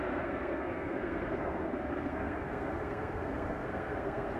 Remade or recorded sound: remade